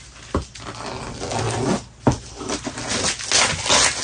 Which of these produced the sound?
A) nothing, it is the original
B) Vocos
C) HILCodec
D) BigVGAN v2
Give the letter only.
A